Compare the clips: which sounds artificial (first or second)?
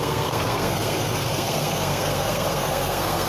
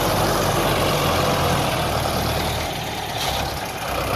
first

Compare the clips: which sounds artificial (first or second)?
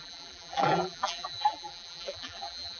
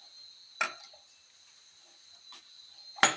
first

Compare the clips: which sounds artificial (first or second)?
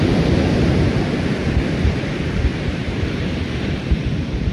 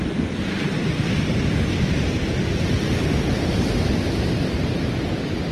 first